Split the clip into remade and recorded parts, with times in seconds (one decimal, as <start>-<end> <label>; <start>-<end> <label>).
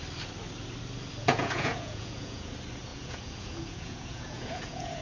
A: 0.0-1.2 recorded; 1.2-2.5 remade; 2.5-2.9 recorded; 2.9-5.0 remade